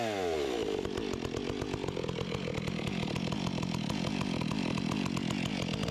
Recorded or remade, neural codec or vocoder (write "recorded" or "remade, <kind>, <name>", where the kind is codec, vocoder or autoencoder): recorded